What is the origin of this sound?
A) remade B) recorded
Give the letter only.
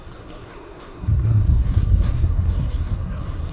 A